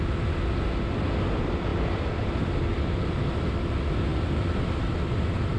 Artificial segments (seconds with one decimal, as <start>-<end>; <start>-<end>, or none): 1.7-3.5